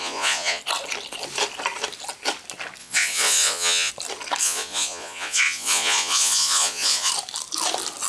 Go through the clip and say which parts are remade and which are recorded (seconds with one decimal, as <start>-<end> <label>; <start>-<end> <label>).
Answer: 0.0-0.6 remade; 0.6-2.8 recorded; 2.8-3.9 remade; 3.9-4.4 recorded; 4.4-7.1 remade; 7.1-8.1 recorded